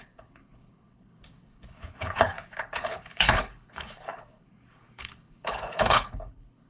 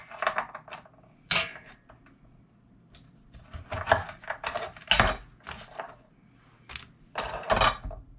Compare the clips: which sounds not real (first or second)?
first